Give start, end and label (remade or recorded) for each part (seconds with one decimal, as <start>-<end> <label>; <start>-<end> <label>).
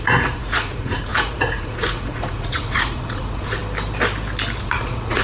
0.0-3.6 remade; 3.6-4.6 recorded; 4.6-5.2 remade